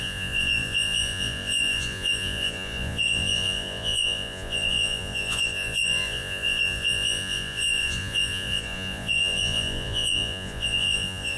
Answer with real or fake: fake